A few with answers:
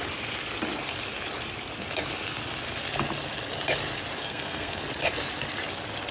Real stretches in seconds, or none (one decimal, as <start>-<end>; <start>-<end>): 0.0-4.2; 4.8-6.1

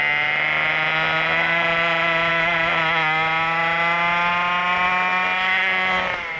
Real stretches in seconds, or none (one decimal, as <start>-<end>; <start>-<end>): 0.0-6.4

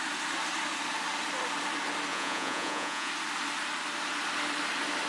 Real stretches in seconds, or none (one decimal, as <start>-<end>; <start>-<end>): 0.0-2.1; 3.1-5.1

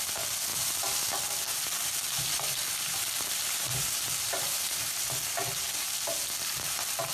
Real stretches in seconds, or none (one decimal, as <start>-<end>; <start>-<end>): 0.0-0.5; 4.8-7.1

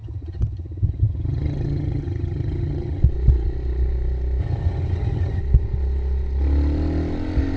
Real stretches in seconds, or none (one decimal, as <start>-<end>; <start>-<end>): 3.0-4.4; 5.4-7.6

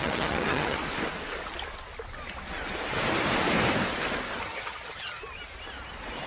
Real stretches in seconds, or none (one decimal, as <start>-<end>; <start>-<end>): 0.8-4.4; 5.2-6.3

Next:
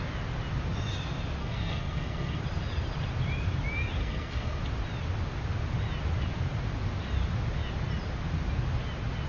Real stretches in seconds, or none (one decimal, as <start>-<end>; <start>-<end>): 0.0-1.4; 2.4-4.0; 4.6-9.3